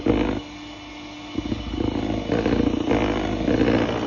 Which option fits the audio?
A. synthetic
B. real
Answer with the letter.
B